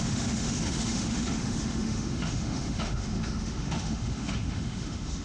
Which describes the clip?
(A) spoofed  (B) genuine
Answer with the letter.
A